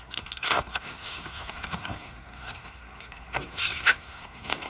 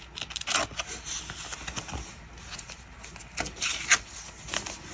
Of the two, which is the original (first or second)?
second